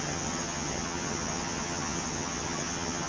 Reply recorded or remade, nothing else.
remade